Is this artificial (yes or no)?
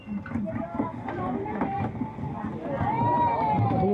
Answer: no